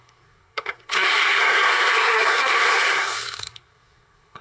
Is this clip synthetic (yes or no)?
yes